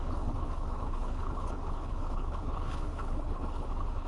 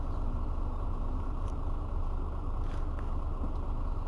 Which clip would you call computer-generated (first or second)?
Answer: first